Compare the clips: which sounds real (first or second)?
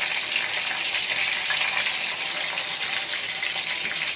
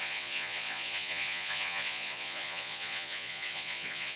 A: first